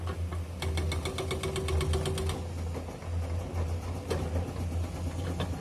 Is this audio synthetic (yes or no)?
no